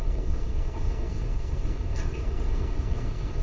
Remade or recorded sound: remade